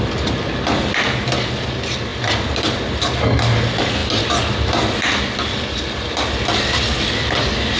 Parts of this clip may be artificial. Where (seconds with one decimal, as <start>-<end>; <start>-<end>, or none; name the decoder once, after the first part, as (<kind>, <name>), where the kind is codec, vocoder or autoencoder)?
none

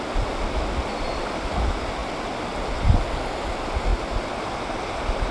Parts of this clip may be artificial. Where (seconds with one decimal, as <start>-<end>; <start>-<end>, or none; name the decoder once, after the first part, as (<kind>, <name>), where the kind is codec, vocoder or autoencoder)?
none

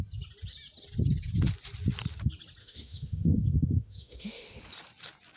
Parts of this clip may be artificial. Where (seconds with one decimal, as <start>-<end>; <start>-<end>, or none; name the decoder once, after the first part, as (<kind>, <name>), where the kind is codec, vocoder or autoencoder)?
2.6-4.6 (autoencoder, DAC-VAE)

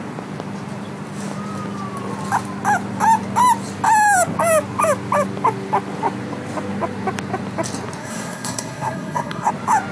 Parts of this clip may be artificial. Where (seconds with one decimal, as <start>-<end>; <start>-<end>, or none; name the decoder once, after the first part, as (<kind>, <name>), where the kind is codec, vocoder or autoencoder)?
8.0-9.5 (codec, SNAC)

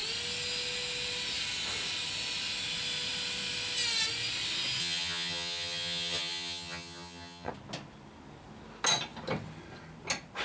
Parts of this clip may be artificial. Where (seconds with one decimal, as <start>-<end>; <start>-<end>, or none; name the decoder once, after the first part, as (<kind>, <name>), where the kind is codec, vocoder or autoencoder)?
4.8-7.5 (vocoder, HiFi-GAN)

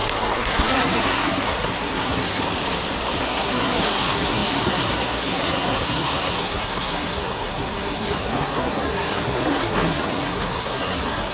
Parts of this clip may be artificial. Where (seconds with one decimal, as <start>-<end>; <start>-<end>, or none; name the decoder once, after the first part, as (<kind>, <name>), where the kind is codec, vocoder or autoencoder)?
0.0-2.4 (codec, SNAC); 3.2-11.3